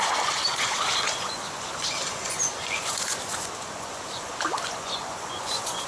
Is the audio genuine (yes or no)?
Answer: no